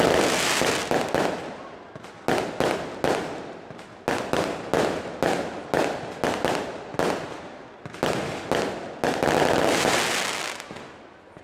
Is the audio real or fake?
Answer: real